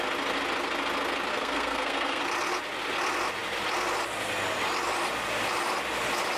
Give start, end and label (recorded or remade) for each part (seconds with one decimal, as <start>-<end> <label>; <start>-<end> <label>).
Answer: 0.0-1.3 recorded; 1.3-2.2 remade; 2.2-6.4 recorded